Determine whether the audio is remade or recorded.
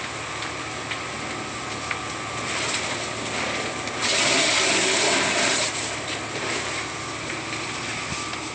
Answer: recorded